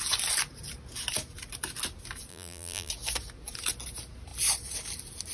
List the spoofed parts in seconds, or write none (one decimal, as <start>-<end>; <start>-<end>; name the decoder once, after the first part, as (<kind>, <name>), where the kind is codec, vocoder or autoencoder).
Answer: 2.3-2.9 (vocoder, BigVGAN v2)

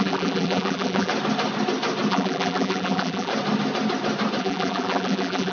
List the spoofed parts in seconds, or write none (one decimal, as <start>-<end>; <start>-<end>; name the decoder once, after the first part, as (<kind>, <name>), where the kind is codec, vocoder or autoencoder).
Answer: 0.0-1.1 (vocoder, BigVGAN v2); 2.1-3.3; 4.4-5.5

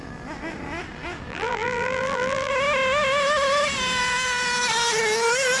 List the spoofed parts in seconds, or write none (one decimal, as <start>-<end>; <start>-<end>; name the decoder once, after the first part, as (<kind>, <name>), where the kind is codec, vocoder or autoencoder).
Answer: 1.3-2.5 (vocoder, BigVGAN v2)

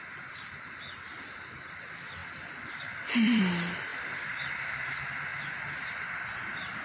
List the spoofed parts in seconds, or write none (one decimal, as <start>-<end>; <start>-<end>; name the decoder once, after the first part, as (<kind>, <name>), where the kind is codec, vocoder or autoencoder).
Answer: 2.2-3.4 (vocoder, BigVGAN v2); 5.3-6.0